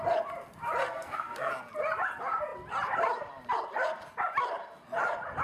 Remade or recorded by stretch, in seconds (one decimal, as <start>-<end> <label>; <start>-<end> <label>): 0.0-0.8 recorded; 0.8-1.5 remade; 1.5-5.4 recorded